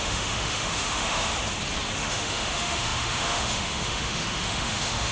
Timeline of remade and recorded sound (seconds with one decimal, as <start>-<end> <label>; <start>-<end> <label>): 0.0-1.3 remade; 1.3-2.0 recorded; 2.0-5.1 remade